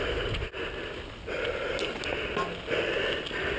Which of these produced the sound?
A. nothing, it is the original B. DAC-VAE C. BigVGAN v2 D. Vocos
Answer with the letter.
A